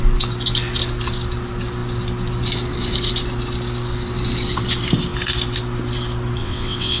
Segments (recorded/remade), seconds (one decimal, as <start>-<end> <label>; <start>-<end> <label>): 0.0-6.4 recorded; 6.4-7.0 remade